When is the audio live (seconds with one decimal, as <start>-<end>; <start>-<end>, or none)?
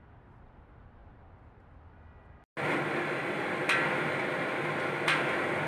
0.0-5.7